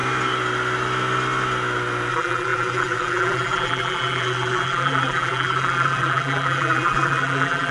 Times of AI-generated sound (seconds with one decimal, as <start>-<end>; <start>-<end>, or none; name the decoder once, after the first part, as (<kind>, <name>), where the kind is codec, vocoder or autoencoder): 2.1-7.7 (vocoder, BigVGAN v2)